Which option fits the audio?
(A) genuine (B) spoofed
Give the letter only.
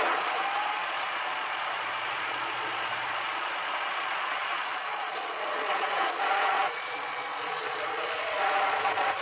B